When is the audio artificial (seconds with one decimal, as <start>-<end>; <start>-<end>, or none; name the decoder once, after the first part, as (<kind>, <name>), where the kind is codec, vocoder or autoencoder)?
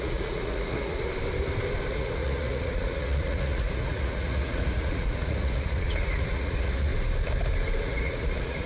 0.0-1.1 (vocoder, Vocos); 1.9-6.9; 7.8-8.7